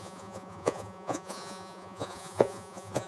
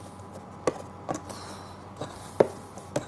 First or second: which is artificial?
first